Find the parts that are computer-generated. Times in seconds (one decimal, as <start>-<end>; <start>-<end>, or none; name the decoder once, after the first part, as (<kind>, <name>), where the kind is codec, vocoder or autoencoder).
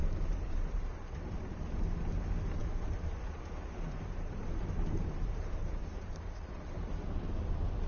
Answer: 0.0-1.8 (vocoder, BigVGAN v2); 3.9-6.7